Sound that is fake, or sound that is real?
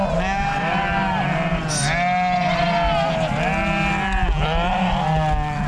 real